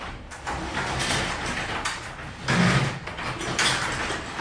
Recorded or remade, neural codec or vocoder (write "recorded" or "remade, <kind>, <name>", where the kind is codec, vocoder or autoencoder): recorded